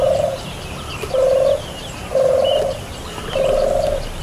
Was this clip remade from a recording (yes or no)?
no